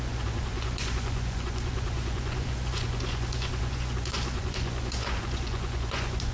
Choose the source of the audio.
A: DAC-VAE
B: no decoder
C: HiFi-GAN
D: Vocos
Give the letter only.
D